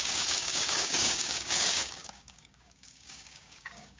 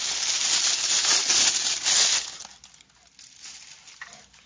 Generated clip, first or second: first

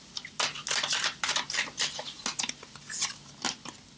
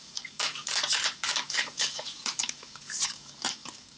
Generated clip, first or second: second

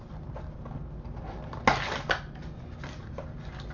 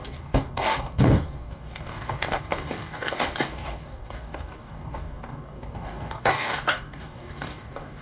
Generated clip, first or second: second